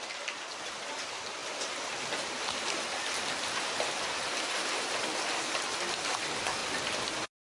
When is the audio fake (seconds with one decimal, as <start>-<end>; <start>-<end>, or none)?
none